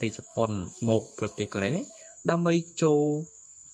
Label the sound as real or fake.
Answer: fake